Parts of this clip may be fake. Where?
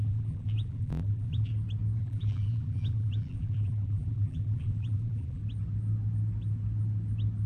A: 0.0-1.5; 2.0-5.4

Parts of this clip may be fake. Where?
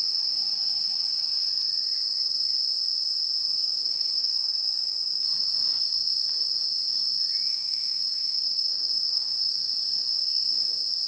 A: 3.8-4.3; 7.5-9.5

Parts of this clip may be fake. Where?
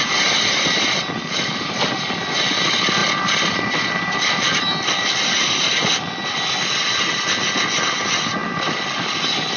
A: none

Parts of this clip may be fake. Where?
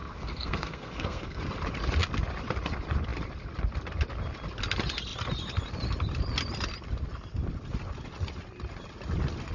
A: 0.0-1.4